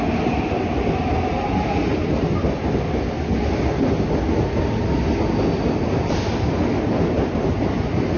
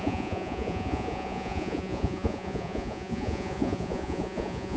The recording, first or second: first